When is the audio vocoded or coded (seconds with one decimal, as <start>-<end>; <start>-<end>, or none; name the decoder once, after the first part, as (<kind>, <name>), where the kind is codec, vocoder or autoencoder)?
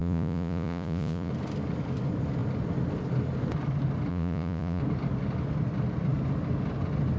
0.0-1.3 (vocoder, Vocos); 4.1-4.8